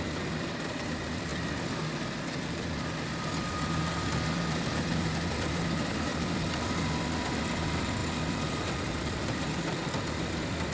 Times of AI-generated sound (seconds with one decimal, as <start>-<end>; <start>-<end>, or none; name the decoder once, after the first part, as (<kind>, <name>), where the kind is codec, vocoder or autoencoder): 0.0-10.7 (vocoder, BigVGAN v2)